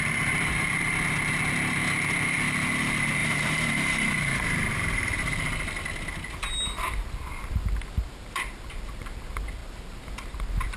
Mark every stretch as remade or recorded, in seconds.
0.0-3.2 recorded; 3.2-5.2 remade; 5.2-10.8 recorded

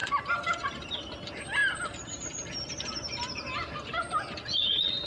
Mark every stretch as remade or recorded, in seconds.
0.0-0.9 remade; 0.9-5.1 recorded

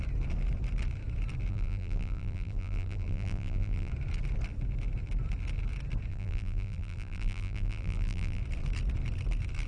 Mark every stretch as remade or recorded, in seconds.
0.0-1.5 recorded; 1.5-3.9 remade; 3.9-6.1 recorded; 6.1-8.4 remade; 8.4-9.7 recorded

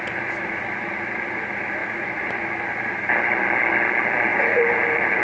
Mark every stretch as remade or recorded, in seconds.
0.0-1.8 recorded; 1.8-2.3 remade; 2.3-4.3 recorded; 4.3-5.2 remade

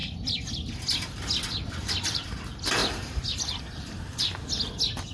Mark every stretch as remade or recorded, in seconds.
0.0-0.5 remade; 0.5-2.8 recorded; 2.8-4.3 remade; 4.3-5.1 recorded

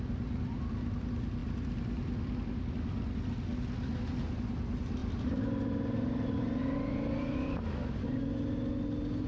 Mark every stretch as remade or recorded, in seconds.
0.0-5.0 recorded; 5.0-7.6 remade; 7.6-9.3 recorded

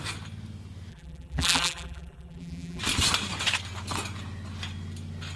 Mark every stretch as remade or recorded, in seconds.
0.0-0.9 recorded; 0.9-2.8 remade; 2.8-5.4 recorded

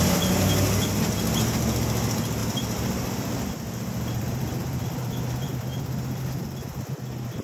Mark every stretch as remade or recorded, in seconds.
0.0-2.4 recorded; 2.4-6.2 remade; 6.2-7.4 recorded